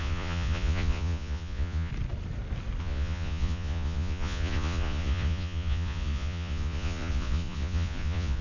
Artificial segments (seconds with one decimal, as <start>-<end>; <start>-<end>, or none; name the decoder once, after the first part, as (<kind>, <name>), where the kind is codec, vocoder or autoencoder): 0.0-1.9 (vocoder, Vocos); 2.8-8.4